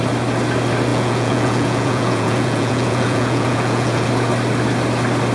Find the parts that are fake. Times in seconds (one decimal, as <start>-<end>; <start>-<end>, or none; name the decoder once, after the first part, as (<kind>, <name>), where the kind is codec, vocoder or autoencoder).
0.9-4.1 (vocoder, Vocos)